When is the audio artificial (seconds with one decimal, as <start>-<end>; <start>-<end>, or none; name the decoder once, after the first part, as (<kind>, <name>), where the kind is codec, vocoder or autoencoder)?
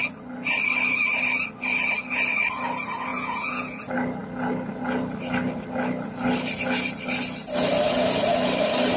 3.1-3.8 (vocoder, Vocos)